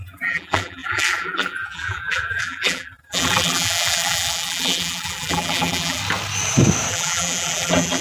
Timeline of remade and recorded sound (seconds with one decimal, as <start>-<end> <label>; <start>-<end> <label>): 0.0-6.0 remade; 6.0-6.9 recorded; 6.9-8.0 remade